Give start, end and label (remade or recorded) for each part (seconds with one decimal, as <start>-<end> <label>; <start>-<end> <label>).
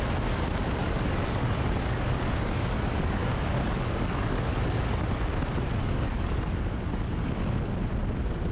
0.0-0.8 recorded; 0.8-5.0 remade; 5.0-5.8 recorded; 5.8-7.3 remade; 7.3-8.5 recorded